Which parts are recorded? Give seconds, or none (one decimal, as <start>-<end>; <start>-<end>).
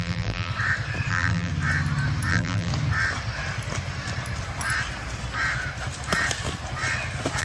0.5-1.1; 1.5-2.3; 2.7-7.4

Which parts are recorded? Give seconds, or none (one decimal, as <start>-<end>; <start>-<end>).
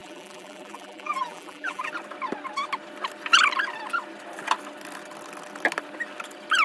1.9-6.6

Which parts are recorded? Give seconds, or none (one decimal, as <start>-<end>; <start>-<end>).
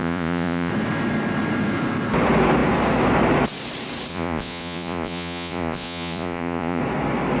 0.7-4.1; 6.8-7.4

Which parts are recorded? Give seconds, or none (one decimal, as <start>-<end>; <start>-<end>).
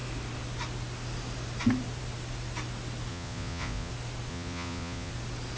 0.0-3.1; 3.9-4.3; 5.1-5.6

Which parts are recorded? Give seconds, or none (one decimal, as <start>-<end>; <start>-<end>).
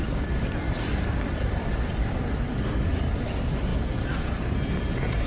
3.7-5.3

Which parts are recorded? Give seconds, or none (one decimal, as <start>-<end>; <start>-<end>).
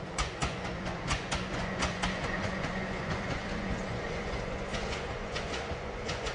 none